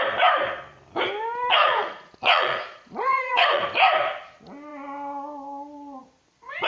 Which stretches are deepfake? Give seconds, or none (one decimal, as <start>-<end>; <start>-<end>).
1.6-3.6